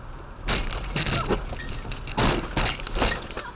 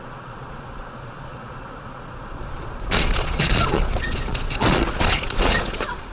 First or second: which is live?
first